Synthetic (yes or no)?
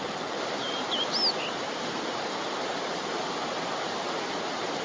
no